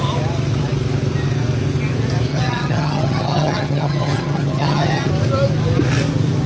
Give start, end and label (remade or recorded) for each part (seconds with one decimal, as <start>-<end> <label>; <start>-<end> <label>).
0.0-2.3 recorded; 2.3-5.1 remade; 5.1-6.5 recorded